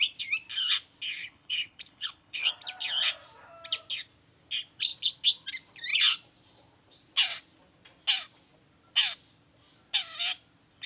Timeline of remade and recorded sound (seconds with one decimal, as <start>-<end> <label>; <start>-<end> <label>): 0.0-1.2 recorded; 1.2-2.5 remade; 2.5-10.9 recorded